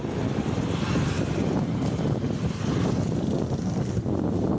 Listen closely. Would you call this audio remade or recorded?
recorded